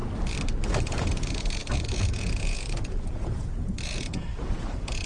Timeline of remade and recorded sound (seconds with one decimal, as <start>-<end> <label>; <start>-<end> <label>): 0.0-0.8 recorded; 0.8-5.1 remade